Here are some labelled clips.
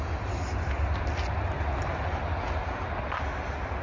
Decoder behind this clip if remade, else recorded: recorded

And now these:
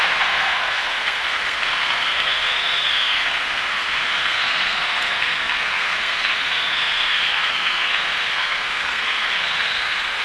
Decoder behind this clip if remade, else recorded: remade, codec, SNAC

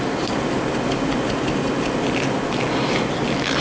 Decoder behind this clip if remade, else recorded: recorded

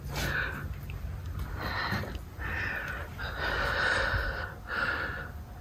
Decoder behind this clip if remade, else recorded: recorded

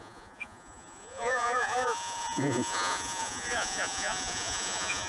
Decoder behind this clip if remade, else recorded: remade, vocoder, Vocos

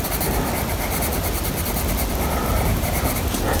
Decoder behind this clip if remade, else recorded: recorded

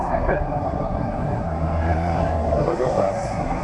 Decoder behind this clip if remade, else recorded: remade, codec, SNAC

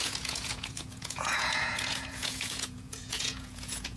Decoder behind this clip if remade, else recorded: remade, vocoder, Vocos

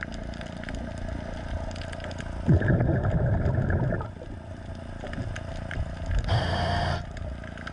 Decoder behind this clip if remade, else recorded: recorded